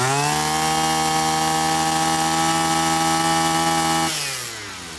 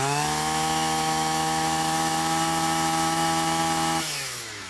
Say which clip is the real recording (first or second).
first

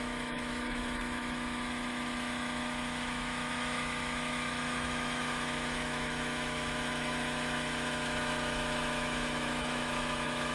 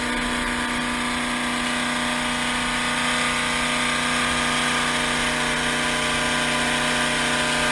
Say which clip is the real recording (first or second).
second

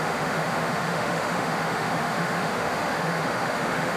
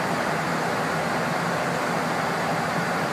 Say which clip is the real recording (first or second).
second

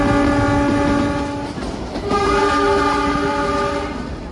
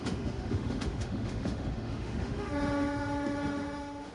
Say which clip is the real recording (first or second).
first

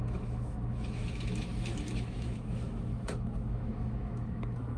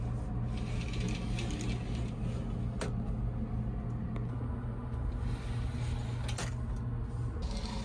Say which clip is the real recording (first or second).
second